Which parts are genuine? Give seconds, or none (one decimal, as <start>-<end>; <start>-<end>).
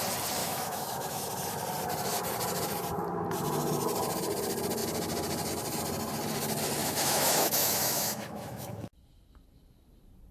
0.0-0.4; 1.3-6.8; 8.9-10.3